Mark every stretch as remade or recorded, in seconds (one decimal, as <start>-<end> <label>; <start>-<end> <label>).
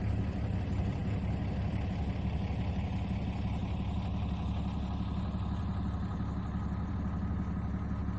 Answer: 0.0-8.2 recorded